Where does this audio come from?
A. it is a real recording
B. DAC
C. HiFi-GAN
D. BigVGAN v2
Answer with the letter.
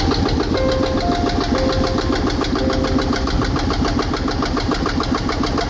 A